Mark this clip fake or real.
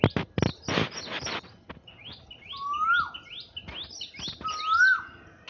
real